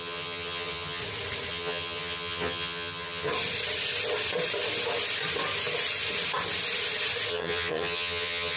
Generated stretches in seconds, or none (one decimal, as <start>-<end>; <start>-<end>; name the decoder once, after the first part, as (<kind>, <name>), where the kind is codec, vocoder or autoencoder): 0.0-1.0 (vocoder, HiFi-GAN); 1.5-3.3; 7.3-8.6